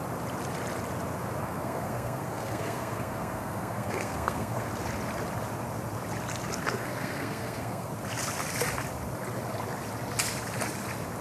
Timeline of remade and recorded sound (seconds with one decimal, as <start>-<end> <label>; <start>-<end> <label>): 0.0-1.4 recorded; 1.4-4.7 remade; 4.7-6.6 recorded; 6.6-7.9 remade; 7.9-11.2 recorded